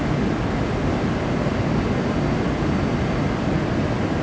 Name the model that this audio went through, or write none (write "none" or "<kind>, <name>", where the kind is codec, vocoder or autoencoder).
none